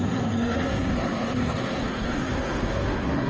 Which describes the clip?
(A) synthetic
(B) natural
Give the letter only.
A